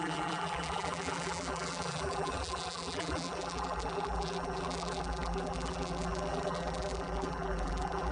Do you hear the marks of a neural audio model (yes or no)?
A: yes